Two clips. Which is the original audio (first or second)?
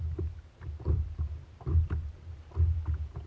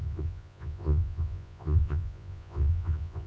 first